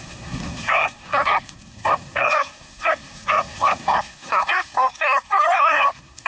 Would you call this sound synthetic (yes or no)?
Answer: yes